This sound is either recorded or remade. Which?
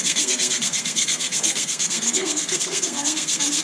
remade